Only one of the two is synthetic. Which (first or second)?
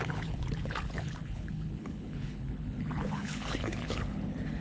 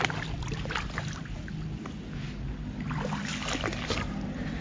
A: first